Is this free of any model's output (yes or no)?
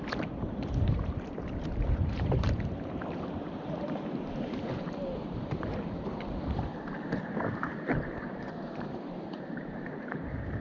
no